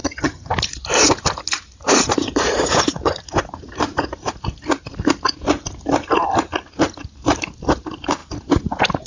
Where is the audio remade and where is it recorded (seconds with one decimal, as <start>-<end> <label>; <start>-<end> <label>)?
0.0-0.5 remade; 0.5-9.1 recorded